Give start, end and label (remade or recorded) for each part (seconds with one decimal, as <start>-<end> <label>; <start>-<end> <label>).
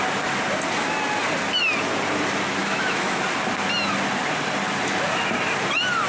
0.0-2.6 recorded; 2.6-3.2 remade; 3.2-6.1 recorded